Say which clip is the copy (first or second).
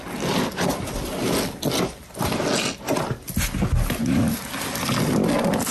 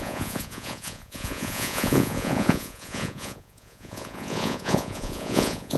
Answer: second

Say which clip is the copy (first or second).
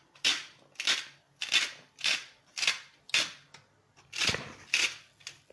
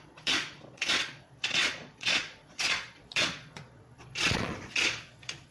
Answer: second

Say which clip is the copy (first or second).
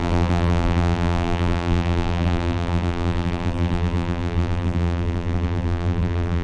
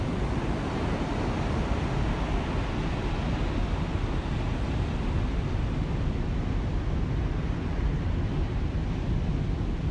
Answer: first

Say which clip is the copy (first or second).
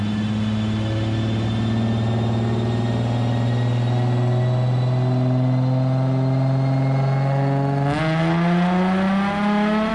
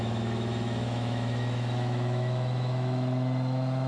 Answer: second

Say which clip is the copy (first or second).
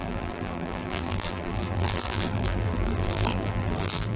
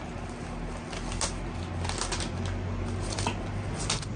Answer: first